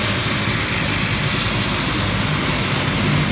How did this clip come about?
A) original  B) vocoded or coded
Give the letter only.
A